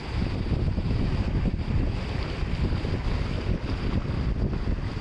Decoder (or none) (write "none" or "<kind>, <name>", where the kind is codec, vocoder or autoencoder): none